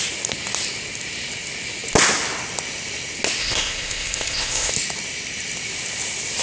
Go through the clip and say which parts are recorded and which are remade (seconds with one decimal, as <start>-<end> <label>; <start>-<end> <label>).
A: 0.0-3.4 recorded; 3.4-4.7 remade; 4.7-6.4 recorded